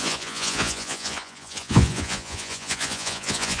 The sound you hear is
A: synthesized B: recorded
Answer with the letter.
A